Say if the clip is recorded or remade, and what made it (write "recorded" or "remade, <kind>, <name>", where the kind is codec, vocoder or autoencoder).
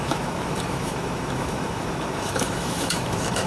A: remade, autoencoder, DAC-VAE